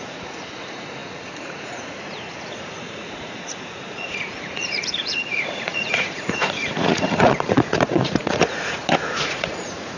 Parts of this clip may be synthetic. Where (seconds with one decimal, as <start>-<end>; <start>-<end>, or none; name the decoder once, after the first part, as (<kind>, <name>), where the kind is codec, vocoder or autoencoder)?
0.0-10.0 (vocoder, Vocos)